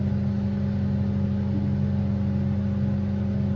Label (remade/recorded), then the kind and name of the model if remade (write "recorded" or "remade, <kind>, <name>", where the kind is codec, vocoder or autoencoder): recorded